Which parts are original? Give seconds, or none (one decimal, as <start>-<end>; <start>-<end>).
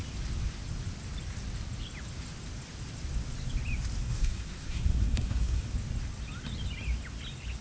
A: 0.0-4.0; 5.6-7.6